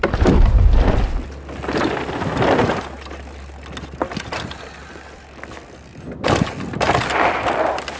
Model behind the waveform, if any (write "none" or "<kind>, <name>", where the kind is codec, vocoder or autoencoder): none